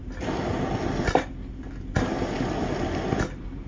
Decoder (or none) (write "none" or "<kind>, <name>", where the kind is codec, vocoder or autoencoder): vocoder, BigVGAN v2